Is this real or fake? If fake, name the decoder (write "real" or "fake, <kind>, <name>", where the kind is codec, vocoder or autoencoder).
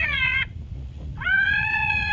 fake, vocoder, Vocos